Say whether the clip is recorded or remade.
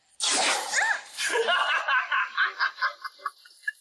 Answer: recorded